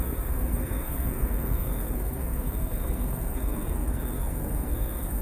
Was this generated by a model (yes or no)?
yes